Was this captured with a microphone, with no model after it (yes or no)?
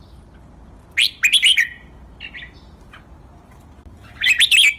yes